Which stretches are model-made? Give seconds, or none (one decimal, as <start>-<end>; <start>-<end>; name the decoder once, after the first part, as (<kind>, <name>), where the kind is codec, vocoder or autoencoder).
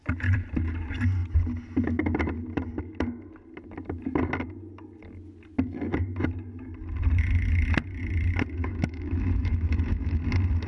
8.6-10.2 (autoencoder, DAC-VAE)